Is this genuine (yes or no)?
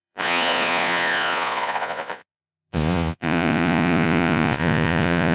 no